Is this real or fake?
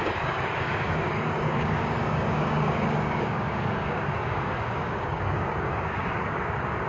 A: fake